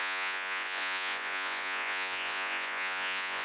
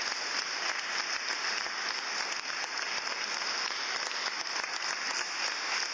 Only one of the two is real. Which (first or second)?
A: second